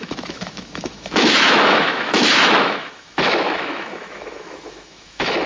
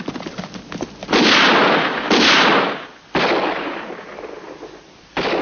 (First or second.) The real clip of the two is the second